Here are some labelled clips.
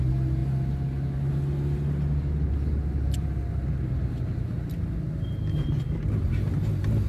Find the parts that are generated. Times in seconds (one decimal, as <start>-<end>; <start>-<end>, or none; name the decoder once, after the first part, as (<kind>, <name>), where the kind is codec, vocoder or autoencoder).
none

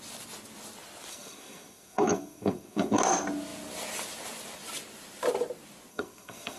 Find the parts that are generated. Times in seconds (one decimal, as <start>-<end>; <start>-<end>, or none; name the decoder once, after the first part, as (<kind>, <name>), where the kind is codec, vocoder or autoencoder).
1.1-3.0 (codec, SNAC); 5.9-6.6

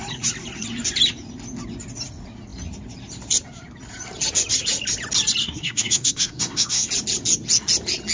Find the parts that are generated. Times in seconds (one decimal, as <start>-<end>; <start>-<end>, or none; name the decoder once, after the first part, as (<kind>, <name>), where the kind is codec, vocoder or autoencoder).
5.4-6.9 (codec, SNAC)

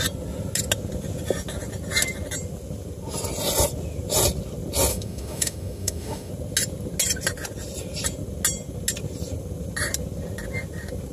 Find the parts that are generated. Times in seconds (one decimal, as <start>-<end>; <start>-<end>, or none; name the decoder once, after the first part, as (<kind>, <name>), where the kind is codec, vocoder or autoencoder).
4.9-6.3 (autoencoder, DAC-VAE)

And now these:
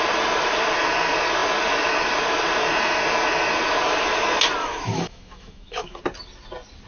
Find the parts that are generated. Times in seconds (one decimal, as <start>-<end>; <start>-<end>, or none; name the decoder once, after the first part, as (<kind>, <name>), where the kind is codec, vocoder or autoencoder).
4.6-6.0 (autoencoder, DAC-VAE)

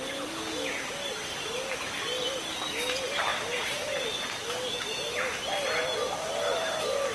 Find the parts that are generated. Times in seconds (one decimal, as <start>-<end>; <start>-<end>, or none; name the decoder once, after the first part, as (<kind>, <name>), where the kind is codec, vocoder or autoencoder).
none

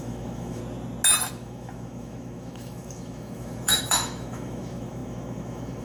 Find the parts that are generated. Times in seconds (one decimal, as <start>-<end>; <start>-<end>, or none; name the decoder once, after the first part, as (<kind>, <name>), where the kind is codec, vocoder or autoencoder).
0.0-0.6 (autoencoder, DAC-VAE); 1.3-5.8

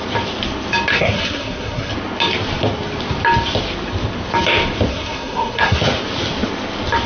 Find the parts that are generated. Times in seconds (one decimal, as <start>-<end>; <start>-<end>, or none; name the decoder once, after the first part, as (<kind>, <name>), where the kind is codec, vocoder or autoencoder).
0.9-1.9 (codec, SNAC); 4.9-5.8